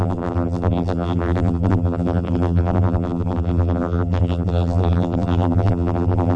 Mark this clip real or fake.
fake